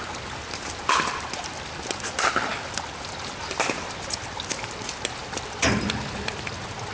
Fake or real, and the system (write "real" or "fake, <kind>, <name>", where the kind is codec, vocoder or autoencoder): real